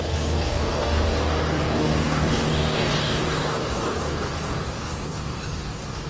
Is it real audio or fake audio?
fake